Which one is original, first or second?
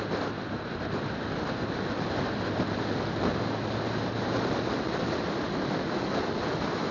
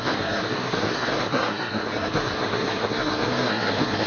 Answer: first